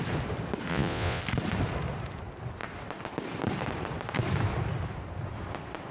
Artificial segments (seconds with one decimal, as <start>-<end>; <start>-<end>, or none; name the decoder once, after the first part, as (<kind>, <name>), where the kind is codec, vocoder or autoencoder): 0.7-1.2 (vocoder, Vocos)